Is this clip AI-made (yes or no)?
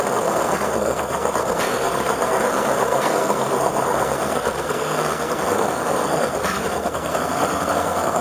yes